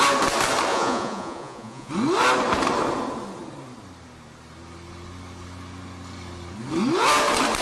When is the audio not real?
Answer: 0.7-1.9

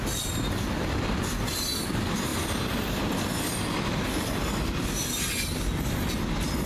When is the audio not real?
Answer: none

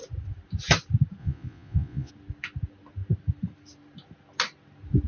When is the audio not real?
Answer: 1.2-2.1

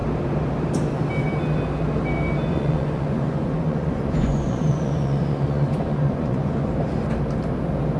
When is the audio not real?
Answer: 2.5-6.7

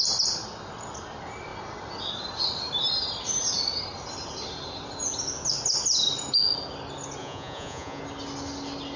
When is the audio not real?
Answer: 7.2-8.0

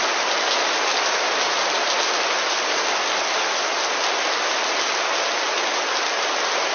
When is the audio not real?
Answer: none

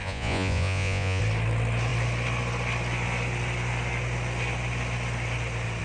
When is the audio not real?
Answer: 0.0-1.2

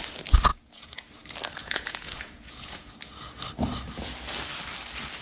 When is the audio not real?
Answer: 0.5-1.1; 1.6-2.9